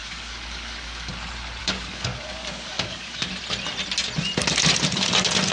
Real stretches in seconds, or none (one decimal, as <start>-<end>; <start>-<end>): 1.1-1.6; 3.3-5.5